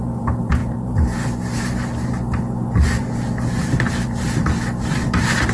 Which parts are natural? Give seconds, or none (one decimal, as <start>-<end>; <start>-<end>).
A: 2.2-2.9